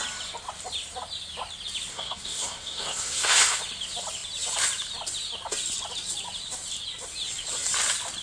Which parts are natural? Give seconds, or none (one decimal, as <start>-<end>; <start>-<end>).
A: 0.0-1.9; 3.6-8.2